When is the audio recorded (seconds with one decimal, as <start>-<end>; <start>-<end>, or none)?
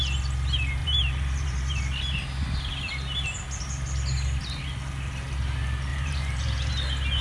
0.0-0.8; 1.8-5.9; 6.7-7.2